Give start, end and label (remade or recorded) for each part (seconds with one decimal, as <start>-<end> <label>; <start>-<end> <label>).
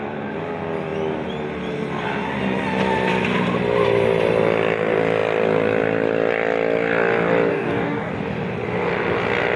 0.0-7.5 recorded; 7.5-8.1 remade; 8.1-9.6 recorded